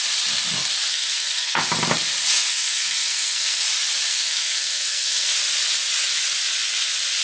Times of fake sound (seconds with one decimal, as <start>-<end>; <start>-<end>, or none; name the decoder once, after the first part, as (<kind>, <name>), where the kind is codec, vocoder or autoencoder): 0.9-1.6 (codec, SNAC); 2.5-3.6; 4.1-5.3